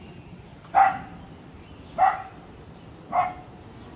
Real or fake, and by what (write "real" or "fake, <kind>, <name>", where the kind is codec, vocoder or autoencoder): real